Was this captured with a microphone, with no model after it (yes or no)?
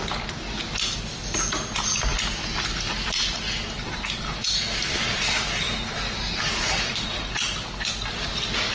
yes